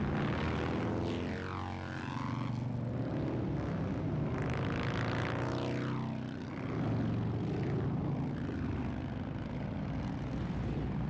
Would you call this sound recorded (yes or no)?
yes